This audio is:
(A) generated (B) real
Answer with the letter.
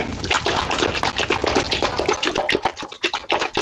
B